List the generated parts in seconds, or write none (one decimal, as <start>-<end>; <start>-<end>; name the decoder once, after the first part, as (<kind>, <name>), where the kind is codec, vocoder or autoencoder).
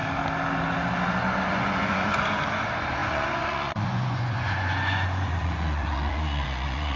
1.5-7.0 (vocoder, Vocos)